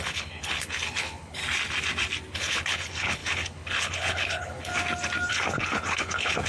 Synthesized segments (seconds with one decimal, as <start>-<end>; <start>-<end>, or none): 0.0-1.4; 2.3-4.7; 5.3-6.5